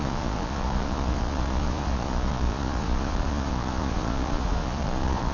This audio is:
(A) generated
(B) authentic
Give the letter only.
A